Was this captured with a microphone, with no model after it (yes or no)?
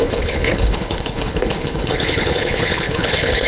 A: no